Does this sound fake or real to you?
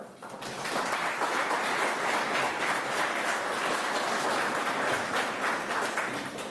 real